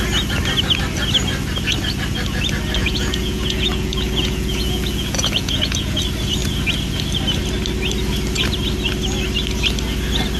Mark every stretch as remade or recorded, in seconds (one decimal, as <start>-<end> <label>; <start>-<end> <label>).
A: 0.0-2.8 recorded; 2.8-6.0 remade; 6.0-10.4 recorded